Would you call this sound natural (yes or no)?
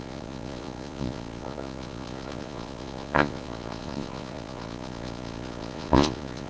no